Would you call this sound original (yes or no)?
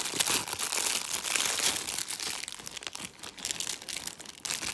yes